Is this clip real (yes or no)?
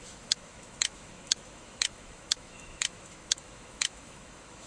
no